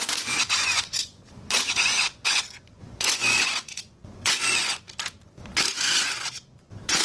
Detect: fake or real fake